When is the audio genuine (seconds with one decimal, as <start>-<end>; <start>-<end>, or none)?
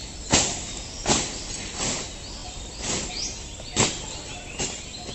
0.8-2.4; 3.1-5.1